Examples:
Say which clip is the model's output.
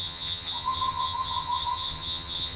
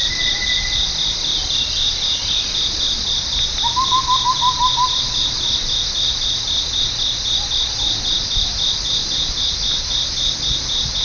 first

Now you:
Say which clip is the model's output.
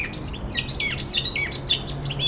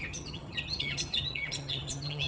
second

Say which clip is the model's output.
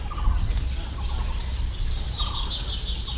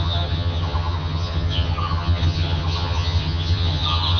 second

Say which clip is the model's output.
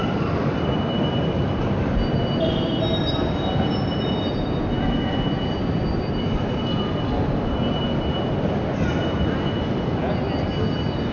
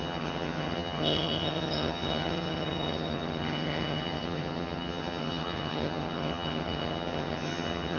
second